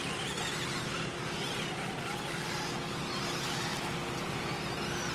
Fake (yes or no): no